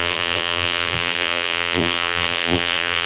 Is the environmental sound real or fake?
fake